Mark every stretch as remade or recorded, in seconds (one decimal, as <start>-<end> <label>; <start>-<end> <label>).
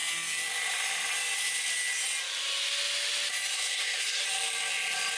0.0-3.5 recorded; 3.5-4.2 remade; 4.2-5.2 recorded